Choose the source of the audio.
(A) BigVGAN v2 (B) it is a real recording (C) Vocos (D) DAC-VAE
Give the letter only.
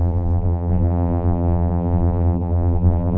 A